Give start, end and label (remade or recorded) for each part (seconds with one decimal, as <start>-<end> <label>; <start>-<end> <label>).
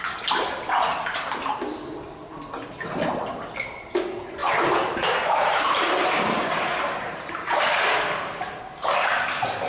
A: 0.0-4.4 recorded; 4.4-8.6 remade; 8.6-9.7 recorded